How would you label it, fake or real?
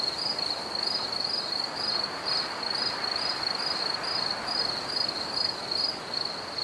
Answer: real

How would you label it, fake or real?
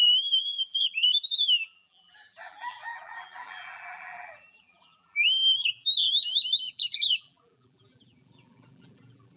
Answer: fake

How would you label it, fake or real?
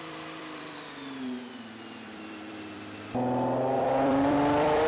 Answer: fake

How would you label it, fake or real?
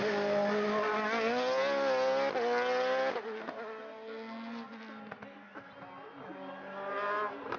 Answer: real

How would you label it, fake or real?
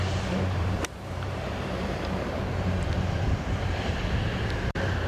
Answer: fake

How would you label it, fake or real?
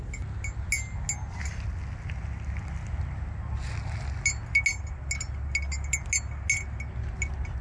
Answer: real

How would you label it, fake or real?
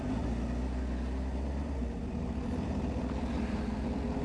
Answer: real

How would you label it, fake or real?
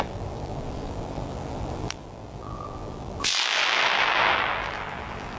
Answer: fake